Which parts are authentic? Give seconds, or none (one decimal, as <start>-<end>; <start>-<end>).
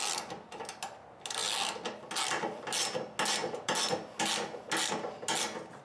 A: 0.0-5.8